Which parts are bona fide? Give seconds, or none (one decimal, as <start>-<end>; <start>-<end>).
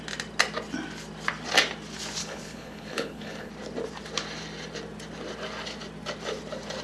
0.0-2.2; 3.5-6.8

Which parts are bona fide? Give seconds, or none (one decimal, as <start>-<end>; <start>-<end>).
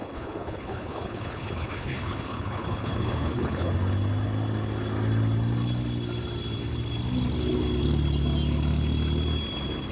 3.7-9.9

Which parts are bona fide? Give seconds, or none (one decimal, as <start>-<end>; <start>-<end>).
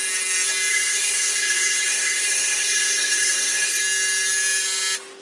0.0-0.7; 3.8-5.2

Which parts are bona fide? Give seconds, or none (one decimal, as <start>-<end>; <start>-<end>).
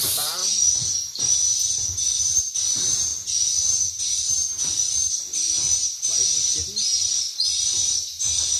0.4-2.2; 3.1-4.0; 5.3-7.5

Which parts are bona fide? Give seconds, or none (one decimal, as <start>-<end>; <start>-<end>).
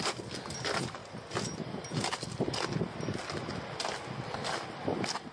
0.0-5.3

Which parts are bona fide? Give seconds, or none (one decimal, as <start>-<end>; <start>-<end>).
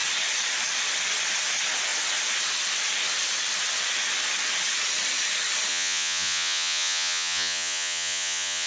0.0-5.7